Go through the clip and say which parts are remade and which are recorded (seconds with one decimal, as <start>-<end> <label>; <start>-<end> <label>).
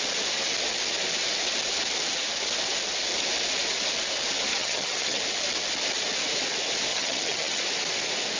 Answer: 0.0-4.5 recorded; 4.5-5.2 remade; 5.2-6.9 recorded; 6.9-7.6 remade; 7.6-8.4 recorded